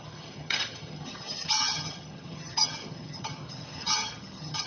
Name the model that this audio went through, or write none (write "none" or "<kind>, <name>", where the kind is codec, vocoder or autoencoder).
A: vocoder, HiFi-GAN